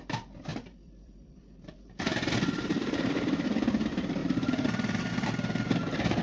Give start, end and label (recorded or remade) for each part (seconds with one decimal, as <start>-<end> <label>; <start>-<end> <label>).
0.0-0.5 recorded; 0.5-1.9 remade; 1.9-2.7 recorded; 2.7-3.8 remade; 3.8-4.2 recorded; 4.2-5.1 remade; 5.1-6.2 recorded